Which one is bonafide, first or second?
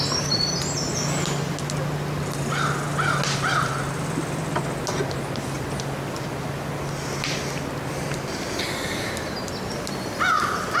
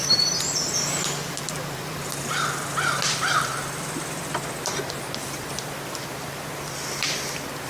first